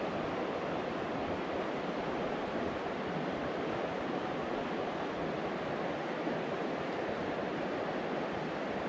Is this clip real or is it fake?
real